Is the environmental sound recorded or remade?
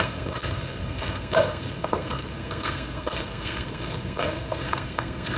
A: remade